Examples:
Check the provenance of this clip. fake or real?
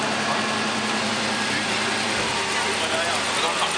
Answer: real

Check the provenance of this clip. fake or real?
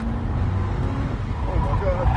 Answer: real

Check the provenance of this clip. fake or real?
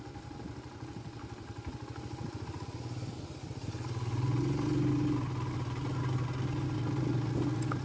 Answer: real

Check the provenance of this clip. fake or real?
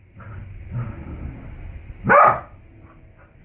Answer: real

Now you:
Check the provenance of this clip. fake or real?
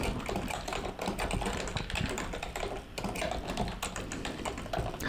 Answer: fake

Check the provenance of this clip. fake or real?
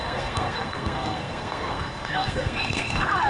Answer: fake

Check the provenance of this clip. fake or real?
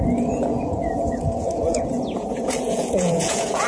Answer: fake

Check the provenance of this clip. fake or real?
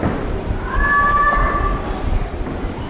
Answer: real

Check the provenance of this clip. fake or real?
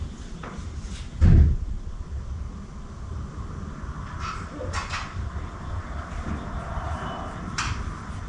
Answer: real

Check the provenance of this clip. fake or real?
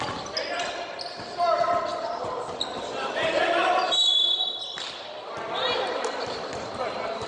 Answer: real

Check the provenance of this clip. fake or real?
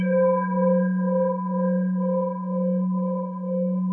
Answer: fake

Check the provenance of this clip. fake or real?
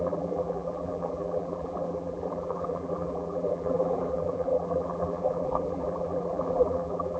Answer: fake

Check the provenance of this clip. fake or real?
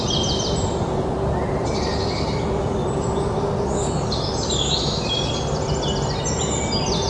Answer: real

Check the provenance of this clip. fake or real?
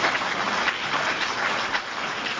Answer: real